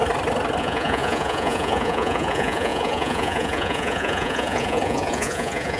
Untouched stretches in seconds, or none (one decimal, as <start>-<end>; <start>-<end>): 0.0-0.6